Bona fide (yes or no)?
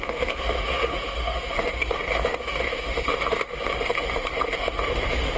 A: no